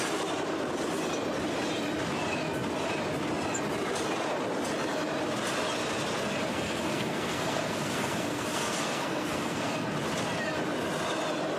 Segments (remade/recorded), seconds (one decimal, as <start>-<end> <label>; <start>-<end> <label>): 0.0-6.5 recorded; 6.5-9.7 remade; 9.7-11.6 recorded